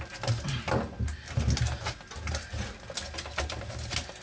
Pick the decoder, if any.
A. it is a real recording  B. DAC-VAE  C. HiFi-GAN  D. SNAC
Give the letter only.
A